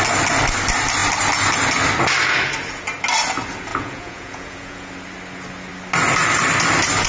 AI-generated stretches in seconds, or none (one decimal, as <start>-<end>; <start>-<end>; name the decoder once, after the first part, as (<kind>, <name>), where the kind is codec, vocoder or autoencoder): 3.7-4.9 (vocoder, Vocos)